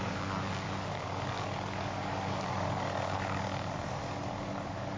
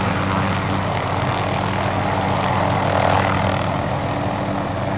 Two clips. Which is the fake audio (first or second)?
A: first